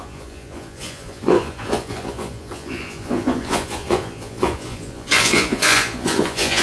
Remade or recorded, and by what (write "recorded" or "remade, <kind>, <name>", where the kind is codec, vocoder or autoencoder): remade, vocoder, Vocos